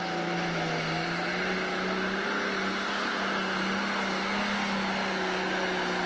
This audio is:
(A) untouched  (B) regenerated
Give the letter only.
A